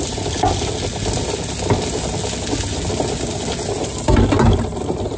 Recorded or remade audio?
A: recorded